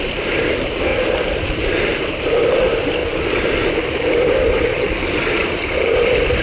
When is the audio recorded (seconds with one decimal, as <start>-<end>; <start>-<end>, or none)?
0.9-1.4; 3.0-4.6